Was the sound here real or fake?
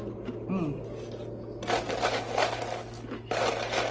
real